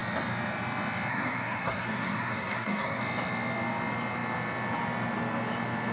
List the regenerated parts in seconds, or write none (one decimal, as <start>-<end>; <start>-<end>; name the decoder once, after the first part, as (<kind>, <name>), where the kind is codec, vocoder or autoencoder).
1.1-3.0 (codec, SNAC)